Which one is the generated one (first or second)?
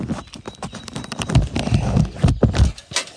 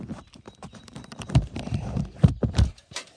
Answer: second